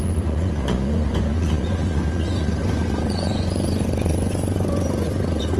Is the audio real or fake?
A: fake